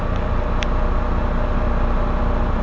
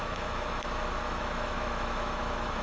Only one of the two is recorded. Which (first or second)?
first